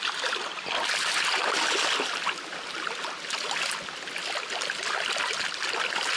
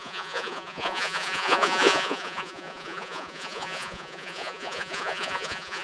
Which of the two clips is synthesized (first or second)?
second